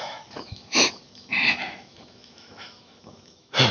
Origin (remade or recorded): remade